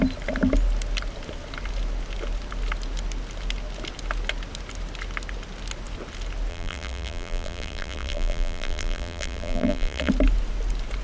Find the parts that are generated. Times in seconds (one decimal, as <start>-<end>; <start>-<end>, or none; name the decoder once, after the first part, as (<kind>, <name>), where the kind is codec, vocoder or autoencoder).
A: 6.5-10.1 (vocoder, BigVGAN v2)